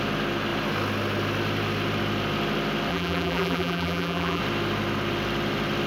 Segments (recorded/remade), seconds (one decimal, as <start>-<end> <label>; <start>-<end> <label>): 0.0-2.9 recorded; 2.9-4.4 remade; 4.4-5.9 recorded